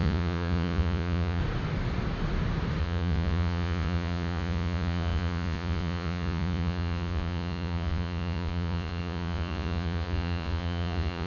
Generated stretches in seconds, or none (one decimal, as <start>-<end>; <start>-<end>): 0.0-1.4; 2.8-11.3